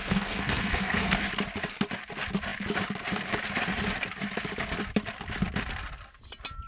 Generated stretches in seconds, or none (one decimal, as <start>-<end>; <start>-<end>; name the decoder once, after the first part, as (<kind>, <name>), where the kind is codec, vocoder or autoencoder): 0.0-1.3 (codec, SNAC)